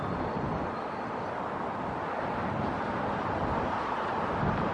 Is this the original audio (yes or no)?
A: yes